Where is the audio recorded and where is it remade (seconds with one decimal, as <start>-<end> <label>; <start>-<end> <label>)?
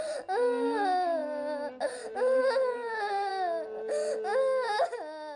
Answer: 0.0-5.4 recorded